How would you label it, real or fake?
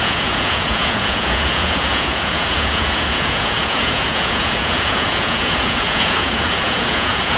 fake